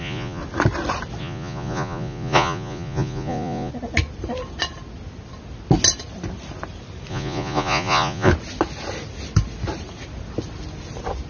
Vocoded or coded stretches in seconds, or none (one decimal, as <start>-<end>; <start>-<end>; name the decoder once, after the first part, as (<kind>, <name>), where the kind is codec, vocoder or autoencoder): 0.0-0.4 (vocoder, Vocos); 1.2-3.7; 7.1-8.3